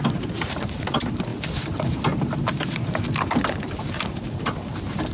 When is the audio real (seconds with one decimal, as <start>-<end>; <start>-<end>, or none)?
0.0-5.1